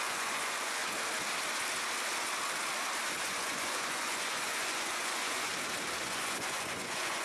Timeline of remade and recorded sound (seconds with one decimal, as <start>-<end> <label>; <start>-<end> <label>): 0.0-0.8 remade; 0.8-3.2 recorded; 3.2-5.5 remade; 5.5-6.0 recorded; 6.0-7.2 remade